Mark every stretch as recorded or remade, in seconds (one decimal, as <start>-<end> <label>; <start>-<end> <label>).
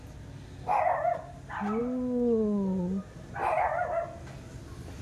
0.0-5.0 recorded